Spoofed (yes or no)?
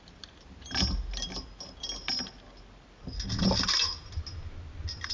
no